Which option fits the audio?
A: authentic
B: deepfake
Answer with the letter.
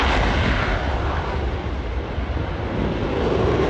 A